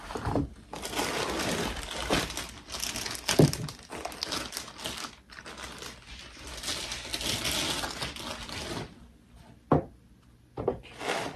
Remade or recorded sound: recorded